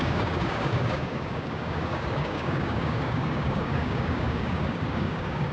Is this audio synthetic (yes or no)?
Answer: yes